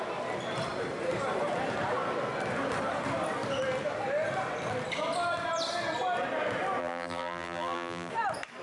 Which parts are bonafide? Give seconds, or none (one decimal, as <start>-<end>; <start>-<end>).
0.0-6.8; 8.1-8.6